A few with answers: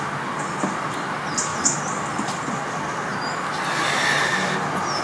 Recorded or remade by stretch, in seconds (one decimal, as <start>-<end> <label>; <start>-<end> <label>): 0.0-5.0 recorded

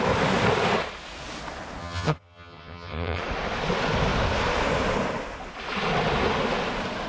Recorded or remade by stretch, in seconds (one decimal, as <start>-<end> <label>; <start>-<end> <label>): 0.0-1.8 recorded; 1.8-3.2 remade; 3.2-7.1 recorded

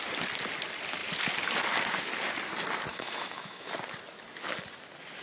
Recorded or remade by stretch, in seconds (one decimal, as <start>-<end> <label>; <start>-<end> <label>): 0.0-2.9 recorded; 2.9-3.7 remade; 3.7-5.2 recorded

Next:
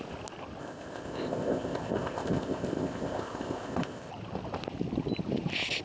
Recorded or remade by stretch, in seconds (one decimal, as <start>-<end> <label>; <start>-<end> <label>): 0.0-0.6 recorded; 0.6-4.1 remade; 4.1-5.8 recorded

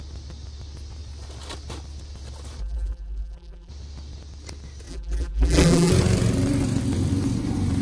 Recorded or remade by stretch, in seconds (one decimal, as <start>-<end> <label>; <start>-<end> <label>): 0.0-2.6 recorded; 2.6-3.7 remade; 3.7-4.9 recorded; 4.9-5.9 remade; 5.9-7.8 recorded

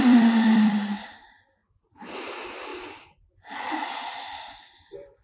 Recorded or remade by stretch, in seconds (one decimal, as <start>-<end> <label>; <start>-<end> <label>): 0.0-1.6 remade; 1.6-2.3 recorded; 2.3-2.7 remade; 2.7-3.6 recorded; 3.6-5.2 remade

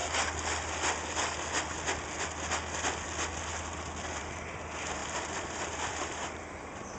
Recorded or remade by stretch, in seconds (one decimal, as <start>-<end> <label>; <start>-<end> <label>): 0.0-4.2 recorded; 4.2-7.0 remade

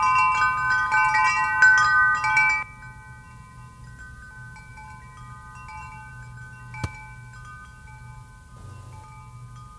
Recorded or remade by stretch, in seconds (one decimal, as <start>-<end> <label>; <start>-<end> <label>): 0.0-9.8 recorded